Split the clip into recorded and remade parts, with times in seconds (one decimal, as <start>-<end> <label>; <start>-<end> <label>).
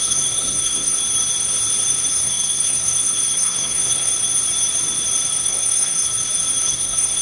0.0-1.0 remade; 1.0-2.1 recorded; 2.1-4.1 remade; 4.1-5.4 recorded; 5.4-6.1 remade; 6.1-6.6 recorded; 6.6-7.2 remade